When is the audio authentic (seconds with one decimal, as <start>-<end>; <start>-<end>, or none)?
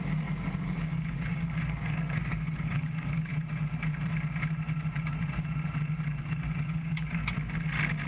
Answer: 3.3-6.2; 7.2-8.1